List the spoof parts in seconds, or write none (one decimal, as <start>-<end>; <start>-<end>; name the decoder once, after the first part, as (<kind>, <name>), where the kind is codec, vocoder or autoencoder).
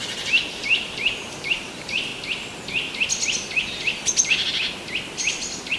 0.0-2.1 (vocoder, BigVGAN v2)